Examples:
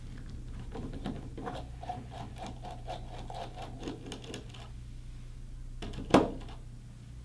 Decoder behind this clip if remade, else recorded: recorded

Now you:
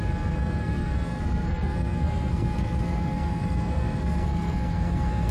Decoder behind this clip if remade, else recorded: remade, codec, SNAC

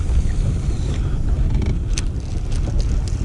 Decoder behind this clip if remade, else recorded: recorded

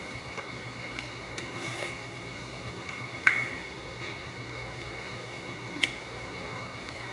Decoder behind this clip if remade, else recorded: remade, codec, SNAC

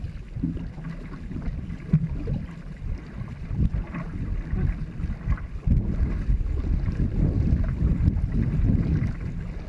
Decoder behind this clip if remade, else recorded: recorded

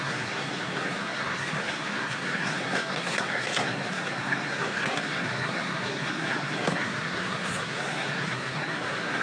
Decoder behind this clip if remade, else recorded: remade, codec, SNAC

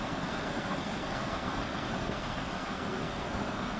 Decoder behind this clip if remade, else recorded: remade, codec, SNAC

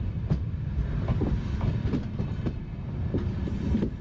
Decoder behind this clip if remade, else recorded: recorded